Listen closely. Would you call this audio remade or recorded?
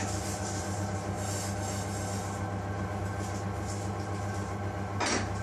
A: recorded